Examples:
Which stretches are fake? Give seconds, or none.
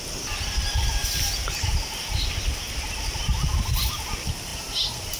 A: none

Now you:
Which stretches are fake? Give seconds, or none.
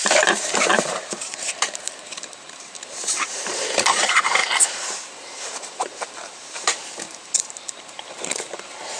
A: 0.0-4.4 (vocoder, BigVGAN v2); 5.8-9.0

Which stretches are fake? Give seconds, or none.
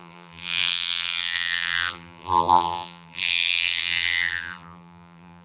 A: 0.0-5.4 (vocoder, BigVGAN v2)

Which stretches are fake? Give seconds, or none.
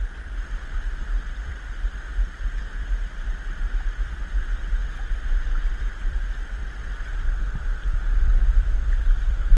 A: 0.0-4.8 (vocoder, BigVGAN v2); 5.5-6.6; 8.9-9.6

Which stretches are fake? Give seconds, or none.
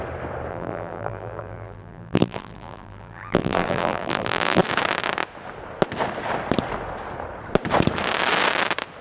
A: 0.5-4.6 (vocoder, BigVGAN v2)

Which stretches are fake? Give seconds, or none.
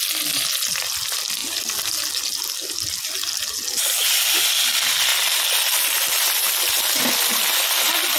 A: none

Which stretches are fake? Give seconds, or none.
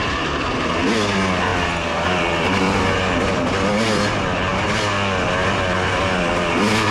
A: 0.0-0.8 (vocoder, BigVGAN v2); 1.5-2.8